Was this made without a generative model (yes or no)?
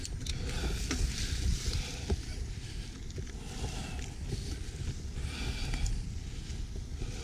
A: yes